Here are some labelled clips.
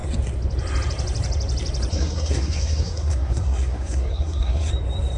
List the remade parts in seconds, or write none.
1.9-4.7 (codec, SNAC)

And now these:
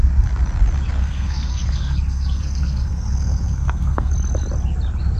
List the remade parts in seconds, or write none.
1.0-4.1 (codec, SNAC)

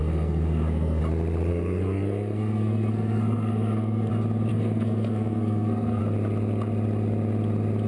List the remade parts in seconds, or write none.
0.0-1.0 (codec, SNAC); 1.5-4.1; 4.5-6.0

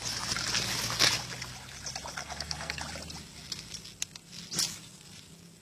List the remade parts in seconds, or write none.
2.2-2.8 (codec, SNAC)

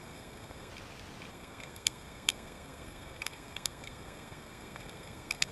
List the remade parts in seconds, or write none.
0.0-0.7 (codec, SNAC); 1.3-5.5